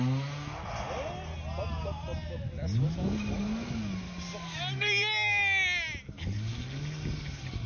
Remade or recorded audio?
recorded